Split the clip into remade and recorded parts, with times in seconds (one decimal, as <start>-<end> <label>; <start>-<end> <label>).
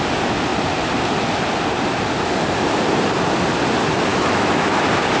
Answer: 0.0-4.1 recorded; 4.1-4.8 remade; 4.8-5.2 recorded